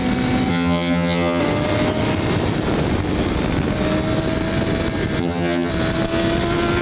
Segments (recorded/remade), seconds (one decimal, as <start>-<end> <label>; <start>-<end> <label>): 0.0-0.5 recorded; 0.5-1.4 remade; 1.4-5.2 recorded; 5.2-5.7 remade; 5.7-6.8 recorded